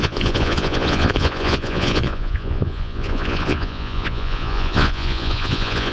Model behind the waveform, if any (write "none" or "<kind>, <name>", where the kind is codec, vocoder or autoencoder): vocoder, Vocos